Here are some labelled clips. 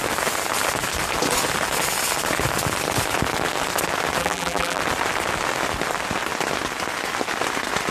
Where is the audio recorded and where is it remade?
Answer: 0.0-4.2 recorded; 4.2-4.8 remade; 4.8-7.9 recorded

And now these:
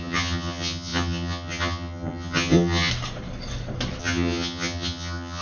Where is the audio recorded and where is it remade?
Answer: 0.0-2.9 remade; 2.9-4.0 recorded; 4.0-5.4 remade

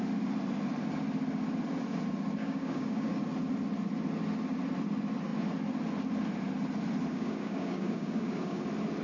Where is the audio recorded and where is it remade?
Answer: 0.0-2.4 recorded; 2.4-3.2 remade; 3.2-7.1 recorded; 7.1-8.6 remade; 8.6-9.0 recorded